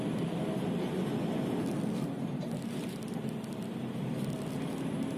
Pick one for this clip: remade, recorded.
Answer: recorded